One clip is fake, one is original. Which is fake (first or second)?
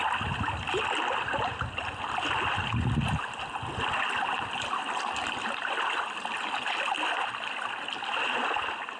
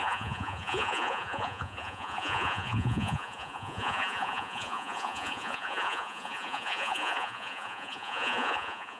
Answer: second